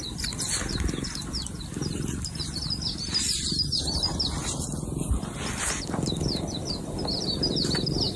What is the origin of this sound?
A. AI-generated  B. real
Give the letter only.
B